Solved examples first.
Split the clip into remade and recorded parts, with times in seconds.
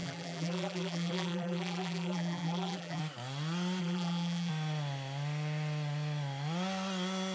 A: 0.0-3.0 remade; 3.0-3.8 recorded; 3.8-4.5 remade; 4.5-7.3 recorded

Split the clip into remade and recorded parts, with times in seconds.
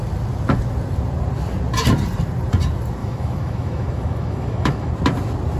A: 0.0-3.0 recorded; 3.0-4.9 remade; 4.9-5.6 recorded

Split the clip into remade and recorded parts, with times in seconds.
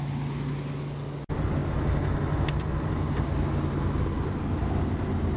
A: 0.0-5.4 recorded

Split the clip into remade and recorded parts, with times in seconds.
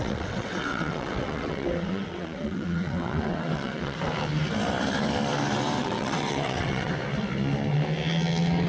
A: 0.0-4.0 remade; 4.0-5.8 recorded; 5.8-6.9 remade; 6.9-8.7 recorded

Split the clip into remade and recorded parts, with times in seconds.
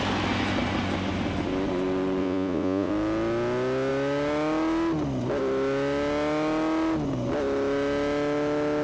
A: 0.0-2.2 recorded; 2.2-2.9 remade; 2.9-8.8 recorded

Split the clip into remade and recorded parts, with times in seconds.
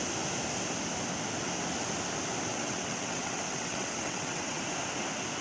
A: 0.0-2.5 recorded; 2.5-4.6 remade; 4.6-5.4 recorded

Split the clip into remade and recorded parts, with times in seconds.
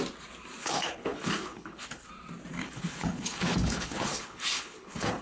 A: 0.0-0.6 recorded; 0.6-2.1 remade; 2.1-2.6 recorded; 2.6-5.2 remade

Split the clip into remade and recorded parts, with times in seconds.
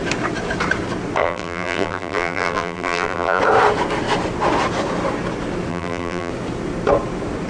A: 0.0-1.2 recorded; 1.2-3.4 remade; 3.4-5.7 recorded; 5.7-6.3 remade; 6.3-7.5 recorded